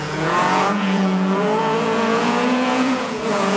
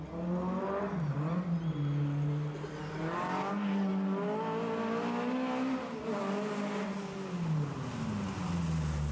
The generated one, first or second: first